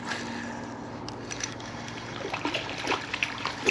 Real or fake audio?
real